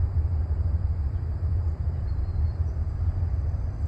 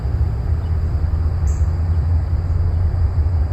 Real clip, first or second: second